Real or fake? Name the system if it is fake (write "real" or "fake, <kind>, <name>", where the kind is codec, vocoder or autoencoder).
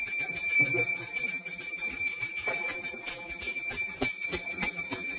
fake, vocoder, BigVGAN v2